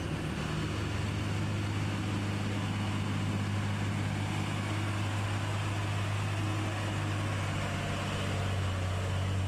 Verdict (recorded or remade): recorded